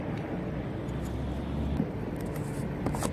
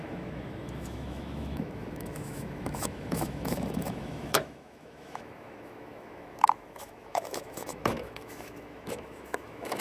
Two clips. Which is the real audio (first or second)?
first